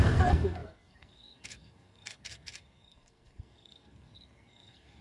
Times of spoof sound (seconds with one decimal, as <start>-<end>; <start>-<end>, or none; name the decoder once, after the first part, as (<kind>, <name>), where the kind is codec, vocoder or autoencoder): 0.0-5.0 (codec, SNAC)